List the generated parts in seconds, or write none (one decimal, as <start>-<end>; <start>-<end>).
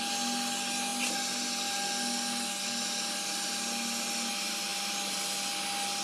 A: none